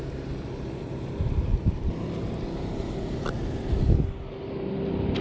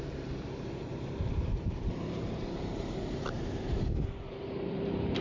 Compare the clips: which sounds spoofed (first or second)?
second